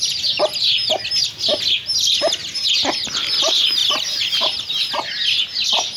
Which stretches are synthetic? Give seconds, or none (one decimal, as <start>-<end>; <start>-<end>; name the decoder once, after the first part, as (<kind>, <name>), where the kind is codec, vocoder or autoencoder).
none